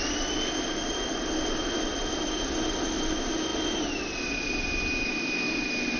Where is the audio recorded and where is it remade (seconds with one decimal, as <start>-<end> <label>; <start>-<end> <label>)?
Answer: 0.0-6.0 recorded